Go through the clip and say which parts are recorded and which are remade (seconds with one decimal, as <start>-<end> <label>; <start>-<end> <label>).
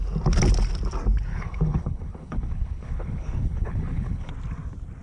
0.0-1.3 recorded; 1.3-4.3 remade; 4.3-5.0 recorded